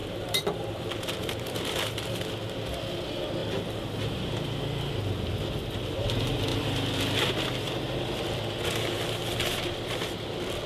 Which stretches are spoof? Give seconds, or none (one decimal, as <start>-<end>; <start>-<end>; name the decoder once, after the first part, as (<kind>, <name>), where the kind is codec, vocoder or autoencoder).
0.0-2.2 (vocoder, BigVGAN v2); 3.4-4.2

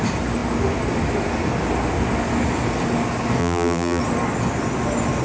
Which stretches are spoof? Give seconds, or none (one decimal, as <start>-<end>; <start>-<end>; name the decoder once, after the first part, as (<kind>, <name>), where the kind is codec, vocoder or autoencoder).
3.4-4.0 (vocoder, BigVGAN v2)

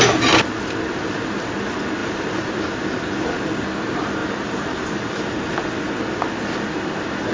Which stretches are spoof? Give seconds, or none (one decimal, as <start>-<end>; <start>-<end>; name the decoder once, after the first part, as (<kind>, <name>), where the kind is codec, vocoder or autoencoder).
2.0-2.5 (vocoder, BigVGAN v2); 4.2-5.7

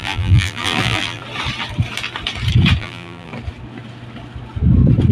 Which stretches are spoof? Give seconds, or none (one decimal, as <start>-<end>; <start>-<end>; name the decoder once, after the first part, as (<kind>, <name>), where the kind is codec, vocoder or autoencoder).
0.0-1.2 (vocoder, BigVGAN v2); 2.8-3.3

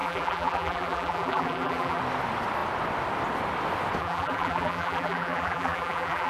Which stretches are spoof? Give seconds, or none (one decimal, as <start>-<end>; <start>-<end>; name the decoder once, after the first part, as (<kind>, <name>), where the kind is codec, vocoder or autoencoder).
0.0-2.0 (vocoder, BigVGAN v2); 4.0-6.3

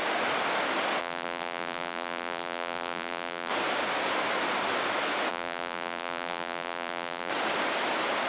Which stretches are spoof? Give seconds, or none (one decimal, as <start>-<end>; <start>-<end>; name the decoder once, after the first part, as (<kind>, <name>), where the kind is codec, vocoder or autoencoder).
1.0-3.5 (vocoder, BigVGAN v2); 5.3-7.3

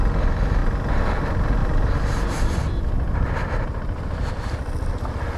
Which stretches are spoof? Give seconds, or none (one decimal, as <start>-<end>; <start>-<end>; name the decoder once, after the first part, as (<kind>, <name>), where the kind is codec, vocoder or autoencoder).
1.6-4.3 (vocoder, BigVGAN v2)

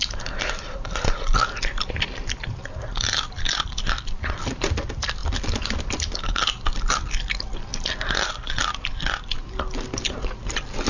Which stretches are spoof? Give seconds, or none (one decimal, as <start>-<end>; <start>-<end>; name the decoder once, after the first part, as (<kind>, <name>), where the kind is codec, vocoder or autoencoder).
7.7-8.2 (vocoder, BigVGAN v2)